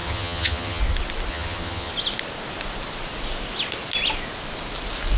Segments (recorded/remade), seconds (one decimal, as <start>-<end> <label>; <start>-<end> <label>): 0.0-0.8 remade; 0.8-1.3 recorded; 1.3-1.9 remade; 1.9-5.2 recorded